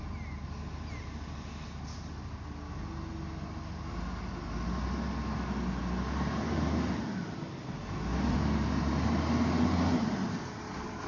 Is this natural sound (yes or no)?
yes